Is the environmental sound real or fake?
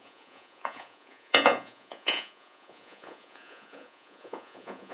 fake